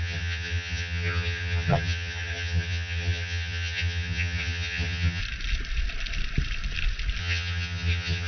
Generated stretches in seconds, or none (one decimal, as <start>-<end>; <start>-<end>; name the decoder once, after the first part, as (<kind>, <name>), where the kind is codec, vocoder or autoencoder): 0.0-5.2 (vocoder, HiFi-GAN); 7.2-8.3